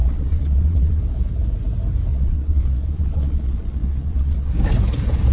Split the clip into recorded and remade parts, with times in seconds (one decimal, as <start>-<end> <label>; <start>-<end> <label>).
0.0-1.0 remade; 1.0-2.1 recorded; 2.1-4.5 remade; 4.5-5.3 recorded